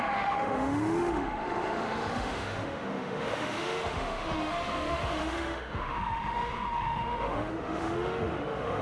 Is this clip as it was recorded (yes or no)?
no